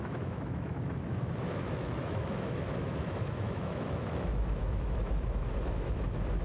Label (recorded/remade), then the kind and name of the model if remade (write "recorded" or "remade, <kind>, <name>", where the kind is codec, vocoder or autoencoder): remade, autoencoder, DAC-VAE